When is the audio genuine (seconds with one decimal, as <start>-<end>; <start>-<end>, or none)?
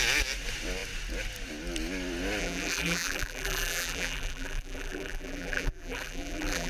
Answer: 0.0-2.4